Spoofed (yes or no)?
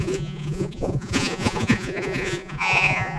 yes